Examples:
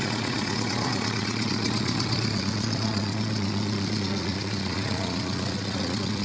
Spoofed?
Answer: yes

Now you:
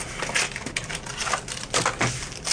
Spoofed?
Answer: no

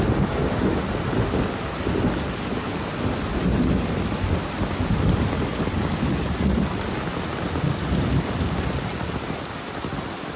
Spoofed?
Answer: no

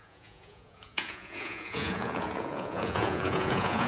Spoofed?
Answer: yes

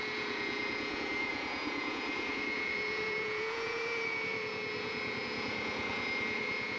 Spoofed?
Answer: yes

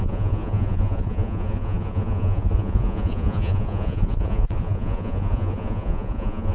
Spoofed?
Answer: yes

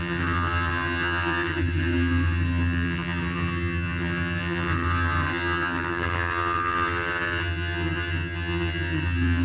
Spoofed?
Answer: yes